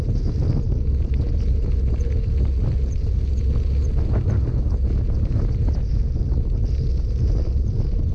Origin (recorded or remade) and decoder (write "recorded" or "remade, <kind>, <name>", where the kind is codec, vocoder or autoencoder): recorded